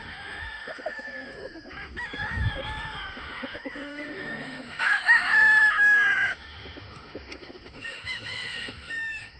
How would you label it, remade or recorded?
remade